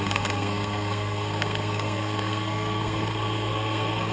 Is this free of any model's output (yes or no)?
no